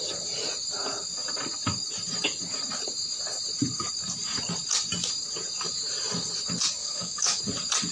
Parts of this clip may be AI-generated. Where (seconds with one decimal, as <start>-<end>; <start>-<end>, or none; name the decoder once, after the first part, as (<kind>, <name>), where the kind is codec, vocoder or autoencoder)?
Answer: 6.8-7.4 (autoencoder, DAC-VAE)